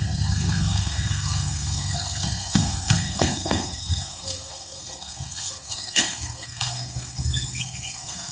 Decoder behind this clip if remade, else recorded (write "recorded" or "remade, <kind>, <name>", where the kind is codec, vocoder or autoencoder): remade, codec, SNAC